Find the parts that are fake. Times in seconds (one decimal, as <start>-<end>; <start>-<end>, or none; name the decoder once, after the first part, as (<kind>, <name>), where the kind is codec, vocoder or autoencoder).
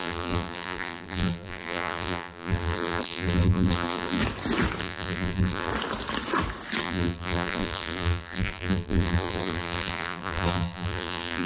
0.0-4.2 (vocoder, BigVGAN v2); 4.8-5.7; 6.8-11.5